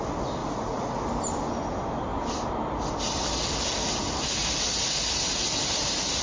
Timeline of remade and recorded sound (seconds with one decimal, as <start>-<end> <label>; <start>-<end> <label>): 0.0-0.4 recorded; 0.4-1.0 remade; 1.0-6.2 recorded